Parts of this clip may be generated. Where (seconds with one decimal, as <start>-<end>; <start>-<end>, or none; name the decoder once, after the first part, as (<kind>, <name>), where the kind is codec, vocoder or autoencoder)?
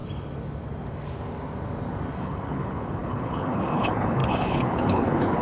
2.2-5.4 (codec, HILCodec)